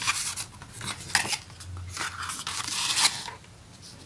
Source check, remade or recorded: recorded